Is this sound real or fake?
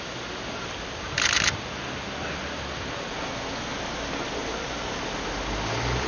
real